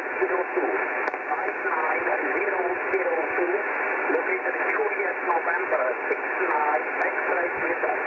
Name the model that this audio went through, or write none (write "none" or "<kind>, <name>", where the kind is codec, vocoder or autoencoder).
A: none